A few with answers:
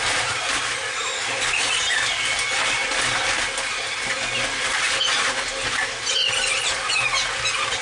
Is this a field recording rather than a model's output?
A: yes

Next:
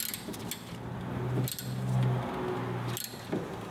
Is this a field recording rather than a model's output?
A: yes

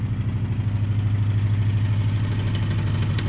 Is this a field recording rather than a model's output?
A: yes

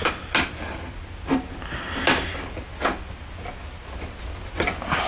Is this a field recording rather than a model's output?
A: yes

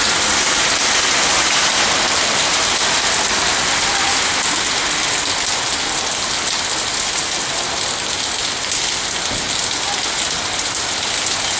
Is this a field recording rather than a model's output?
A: yes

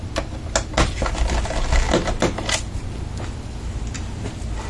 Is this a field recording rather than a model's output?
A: yes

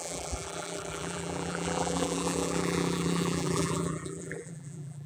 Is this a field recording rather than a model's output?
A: no